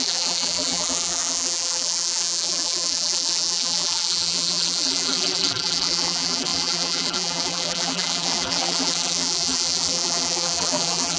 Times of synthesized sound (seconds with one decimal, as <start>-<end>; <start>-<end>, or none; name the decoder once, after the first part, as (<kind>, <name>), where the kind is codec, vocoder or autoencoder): 0.0-11.2 (vocoder, BigVGAN v2)

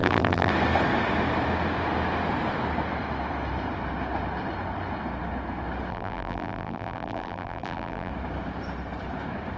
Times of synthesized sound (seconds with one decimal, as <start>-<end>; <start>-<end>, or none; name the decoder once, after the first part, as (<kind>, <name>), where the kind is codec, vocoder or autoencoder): 0.0-0.5 (vocoder, BigVGAN v2); 5.9-8.1